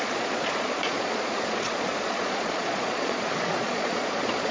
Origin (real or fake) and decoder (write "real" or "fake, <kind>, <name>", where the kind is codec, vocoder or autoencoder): fake, vocoder, Vocos